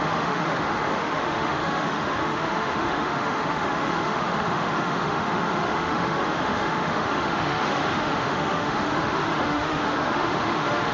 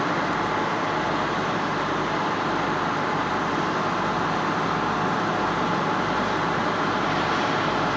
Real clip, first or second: second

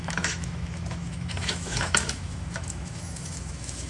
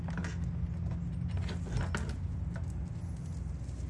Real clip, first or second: second